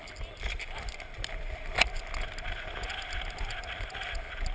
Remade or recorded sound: recorded